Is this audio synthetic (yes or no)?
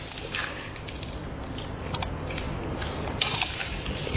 no